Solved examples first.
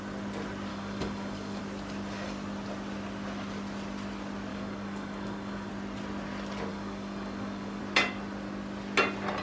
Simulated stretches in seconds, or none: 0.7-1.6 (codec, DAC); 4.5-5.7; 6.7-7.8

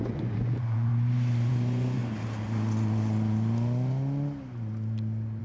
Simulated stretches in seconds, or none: 0.0-0.9 (vocoder, Vocos); 1.5-2.0

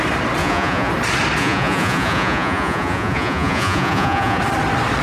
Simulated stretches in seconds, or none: 0.4-0.9 (vocoder, Vocos); 1.4-4.4

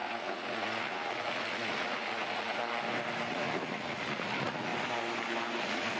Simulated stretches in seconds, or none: 0.0-2.6 (vocoder, Vocos); 3.3-4.7; 5.6-6.0

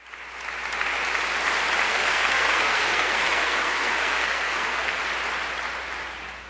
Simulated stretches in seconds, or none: 1.9-5.0 (codec, SNAC)

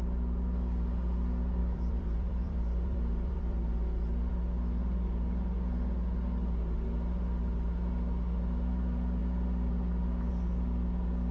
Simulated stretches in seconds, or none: 1.6-4.3 (vocoder, BigVGAN v2)